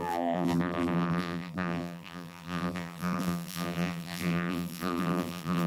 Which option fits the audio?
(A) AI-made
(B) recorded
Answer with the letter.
A